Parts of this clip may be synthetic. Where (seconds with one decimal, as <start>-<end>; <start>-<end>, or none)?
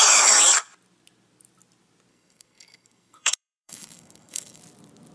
2.1-4.6